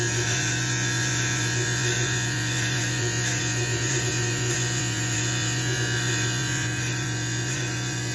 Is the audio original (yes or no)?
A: no